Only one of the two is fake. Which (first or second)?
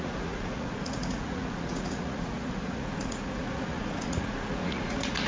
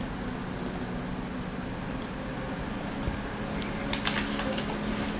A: first